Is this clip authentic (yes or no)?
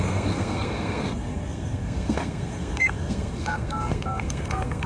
no